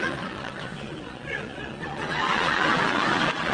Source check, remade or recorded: remade